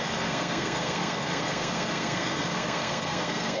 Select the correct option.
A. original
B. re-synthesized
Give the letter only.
B